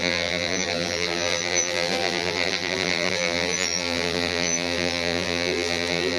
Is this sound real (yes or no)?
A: no